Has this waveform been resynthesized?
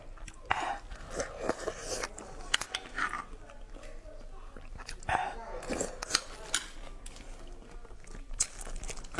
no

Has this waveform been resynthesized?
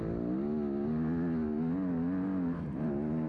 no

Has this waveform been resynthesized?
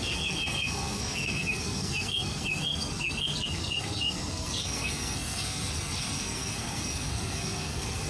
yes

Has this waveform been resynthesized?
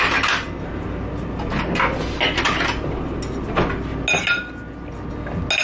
no